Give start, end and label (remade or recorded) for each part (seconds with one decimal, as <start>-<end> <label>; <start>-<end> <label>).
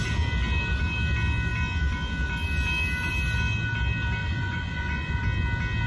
0.0-4.2 recorded; 4.2-5.2 remade; 5.2-5.9 recorded